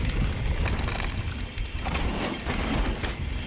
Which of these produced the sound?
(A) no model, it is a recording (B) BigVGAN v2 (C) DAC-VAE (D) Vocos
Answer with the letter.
A